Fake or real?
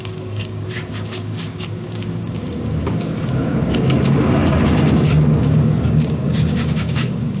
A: fake